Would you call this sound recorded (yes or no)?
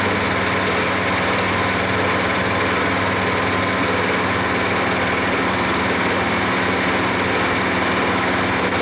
yes